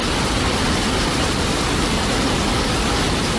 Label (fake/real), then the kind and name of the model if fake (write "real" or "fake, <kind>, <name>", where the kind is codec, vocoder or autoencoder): real